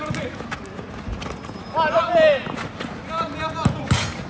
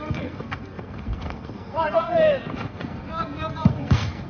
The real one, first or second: first